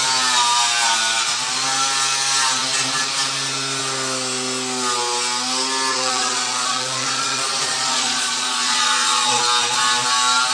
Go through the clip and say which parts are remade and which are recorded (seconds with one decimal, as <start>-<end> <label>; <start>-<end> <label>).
0.0-5.9 recorded; 5.9-9.4 remade; 9.4-10.5 recorded